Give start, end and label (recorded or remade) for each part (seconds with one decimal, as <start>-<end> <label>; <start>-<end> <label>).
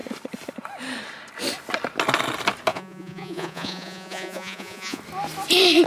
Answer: 0.0-2.7 recorded; 2.7-5.0 remade; 5.0-5.9 recorded